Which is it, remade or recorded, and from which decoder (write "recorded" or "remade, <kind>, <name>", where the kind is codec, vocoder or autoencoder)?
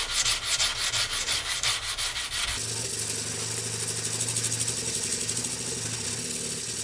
recorded